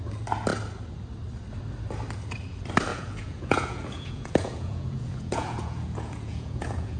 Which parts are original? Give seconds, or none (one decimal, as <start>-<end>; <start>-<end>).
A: 0.0-2.9